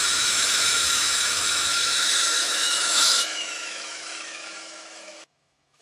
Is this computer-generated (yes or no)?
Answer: yes